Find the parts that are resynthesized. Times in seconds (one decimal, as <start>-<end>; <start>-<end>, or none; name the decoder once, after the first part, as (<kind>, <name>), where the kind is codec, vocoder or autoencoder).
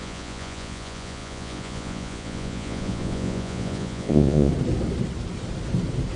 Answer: 0.0-4.5 (vocoder, Vocos)